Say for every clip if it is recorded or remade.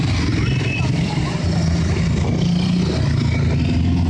recorded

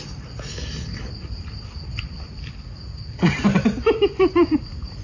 recorded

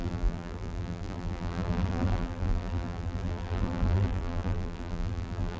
remade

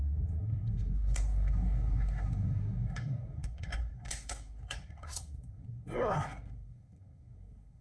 remade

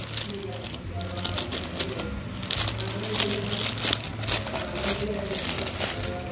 recorded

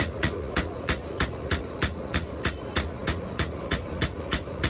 remade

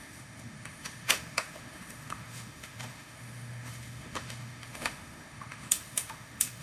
remade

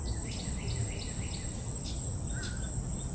recorded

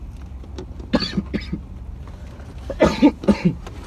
recorded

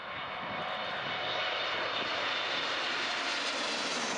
recorded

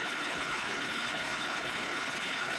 remade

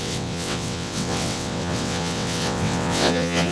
remade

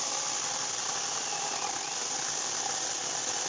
recorded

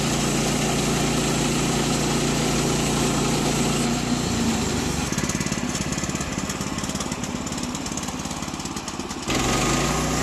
recorded